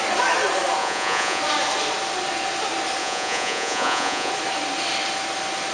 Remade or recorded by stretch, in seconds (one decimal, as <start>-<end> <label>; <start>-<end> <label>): 0.0-0.8 recorded; 0.8-1.4 remade; 1.4-3.0 recorded; 3.0-4.3 remade; 4.3-5.7 recorded